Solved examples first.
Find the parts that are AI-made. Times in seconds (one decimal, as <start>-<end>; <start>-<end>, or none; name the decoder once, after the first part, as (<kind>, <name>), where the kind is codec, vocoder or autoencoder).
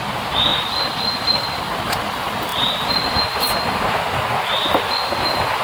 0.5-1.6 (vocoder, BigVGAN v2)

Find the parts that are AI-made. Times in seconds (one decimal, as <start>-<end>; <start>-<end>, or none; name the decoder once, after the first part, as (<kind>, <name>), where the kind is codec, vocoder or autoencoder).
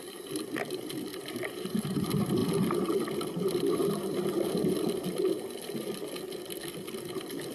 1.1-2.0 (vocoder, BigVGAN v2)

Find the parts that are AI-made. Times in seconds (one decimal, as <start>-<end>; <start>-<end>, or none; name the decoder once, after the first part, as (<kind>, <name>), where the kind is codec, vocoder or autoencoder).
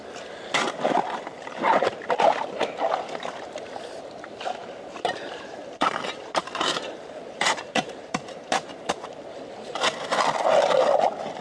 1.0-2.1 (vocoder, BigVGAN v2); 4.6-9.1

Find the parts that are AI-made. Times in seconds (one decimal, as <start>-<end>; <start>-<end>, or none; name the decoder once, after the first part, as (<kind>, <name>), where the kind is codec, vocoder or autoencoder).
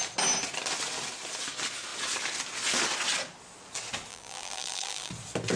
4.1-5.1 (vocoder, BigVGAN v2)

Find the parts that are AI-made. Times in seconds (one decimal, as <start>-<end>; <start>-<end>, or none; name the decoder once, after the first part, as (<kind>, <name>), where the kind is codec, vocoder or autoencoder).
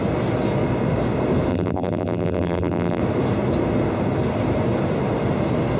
1.5-3.0 (vocoder, BigVGAN v2)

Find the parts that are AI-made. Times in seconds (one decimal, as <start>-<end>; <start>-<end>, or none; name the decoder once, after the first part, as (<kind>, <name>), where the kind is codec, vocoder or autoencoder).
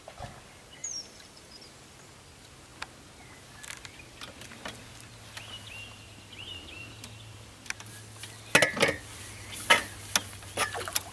0.8-1.5 (vocoder, BigVGAN v2)